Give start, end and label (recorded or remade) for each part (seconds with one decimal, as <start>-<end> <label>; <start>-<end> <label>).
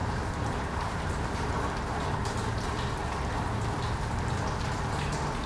0.0-1.4 remade; 1.4-5.5 recorded